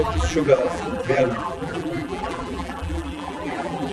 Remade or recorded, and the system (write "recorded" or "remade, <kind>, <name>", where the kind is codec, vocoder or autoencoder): remade, vocoder, BigVGAN v2